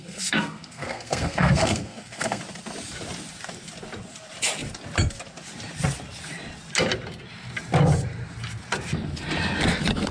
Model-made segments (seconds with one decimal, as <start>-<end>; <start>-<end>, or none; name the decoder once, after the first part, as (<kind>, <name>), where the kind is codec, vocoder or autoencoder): 0.0-2.4 (codec, SNAC)